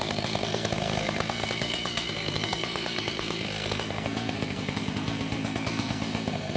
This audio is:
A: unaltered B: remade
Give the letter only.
B